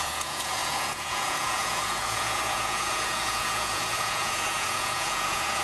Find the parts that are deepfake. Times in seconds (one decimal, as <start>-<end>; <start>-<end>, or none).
0.0-5.6